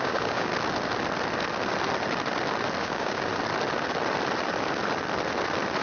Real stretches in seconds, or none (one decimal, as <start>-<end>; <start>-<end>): 0.5-2.8; 3.3-5.8

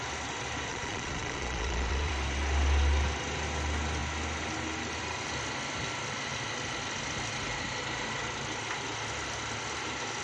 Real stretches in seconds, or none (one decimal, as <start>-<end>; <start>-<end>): 0.0-0.7; 2.1-10.2

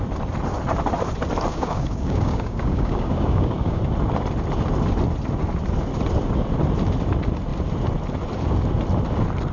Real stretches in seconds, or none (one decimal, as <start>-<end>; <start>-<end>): 0.0-1.5; 3.8-9.5

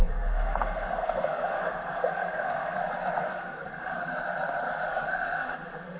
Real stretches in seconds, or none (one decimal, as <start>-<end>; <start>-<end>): 2.8-3.3; 4.1-4.9

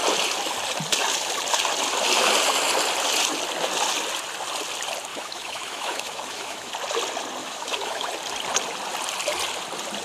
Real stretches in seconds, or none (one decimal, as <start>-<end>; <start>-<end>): 0.0-5.1; 6.7-7.4; 8.1-10.0

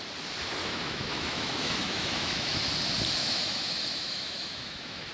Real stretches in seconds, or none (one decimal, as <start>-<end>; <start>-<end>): 0.0-0.6; 2.6-3.2

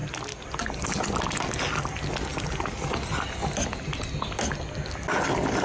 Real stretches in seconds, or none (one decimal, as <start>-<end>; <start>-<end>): 0.0-5.6

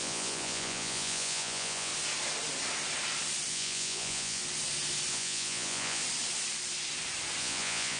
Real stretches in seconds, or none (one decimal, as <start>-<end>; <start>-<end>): 1.9-3.5; 4.4-5.1; 6.0-7.4